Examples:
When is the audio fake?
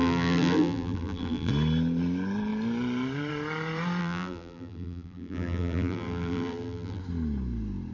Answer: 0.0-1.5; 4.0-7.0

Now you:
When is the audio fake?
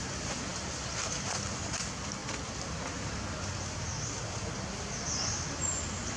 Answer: none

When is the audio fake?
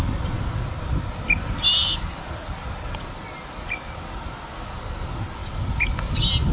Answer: none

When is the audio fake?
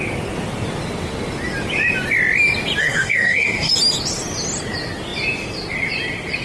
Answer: 2.8-3.7